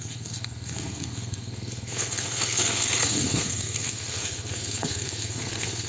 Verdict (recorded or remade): remade